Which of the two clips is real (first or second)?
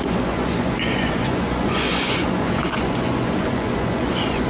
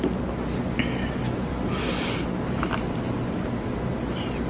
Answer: second